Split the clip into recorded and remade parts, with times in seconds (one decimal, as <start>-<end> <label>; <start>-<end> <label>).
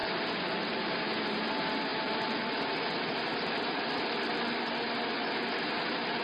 0.0-0.9 remade; 0.9-6.2 recorded